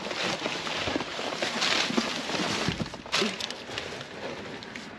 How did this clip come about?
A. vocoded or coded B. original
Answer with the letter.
B